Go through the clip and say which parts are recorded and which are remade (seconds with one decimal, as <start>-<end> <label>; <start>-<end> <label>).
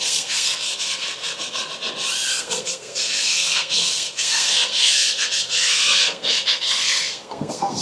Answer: 0.0-1.7 remade; 1.7-2.3 recorded; 2.3-7.8 remade